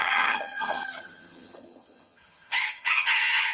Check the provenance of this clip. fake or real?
fake